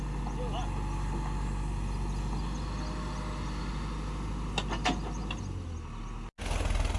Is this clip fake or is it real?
real